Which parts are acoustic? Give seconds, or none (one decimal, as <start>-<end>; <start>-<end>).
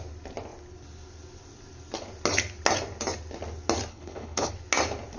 0.0-3.9; 4.5-5.2